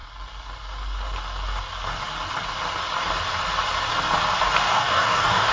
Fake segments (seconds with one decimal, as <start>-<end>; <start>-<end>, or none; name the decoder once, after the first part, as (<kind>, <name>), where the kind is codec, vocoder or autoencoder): 4.6-5.5 (codec, DAC)